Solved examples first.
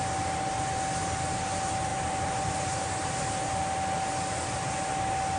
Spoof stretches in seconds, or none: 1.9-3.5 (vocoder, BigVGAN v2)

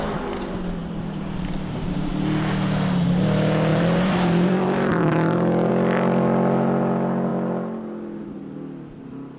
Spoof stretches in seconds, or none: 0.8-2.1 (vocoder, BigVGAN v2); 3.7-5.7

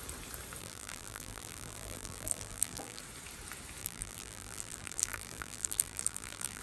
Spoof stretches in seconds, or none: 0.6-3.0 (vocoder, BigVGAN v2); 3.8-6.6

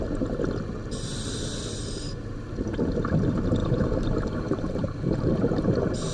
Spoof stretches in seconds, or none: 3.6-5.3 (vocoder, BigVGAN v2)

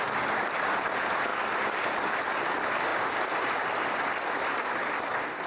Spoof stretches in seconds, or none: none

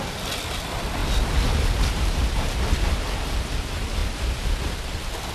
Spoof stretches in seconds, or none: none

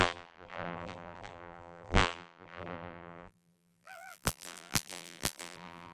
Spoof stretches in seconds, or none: 0.0-5.9 (vocoder, BigVGAN v2)